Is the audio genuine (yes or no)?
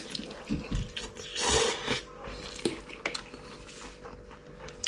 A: yes